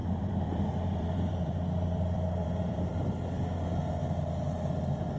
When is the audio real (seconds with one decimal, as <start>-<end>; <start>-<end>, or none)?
3.1-5.2